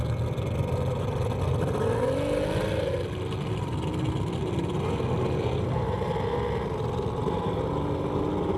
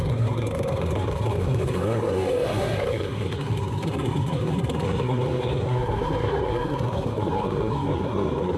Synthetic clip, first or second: second